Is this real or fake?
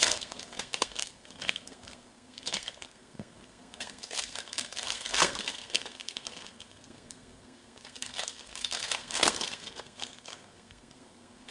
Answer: fake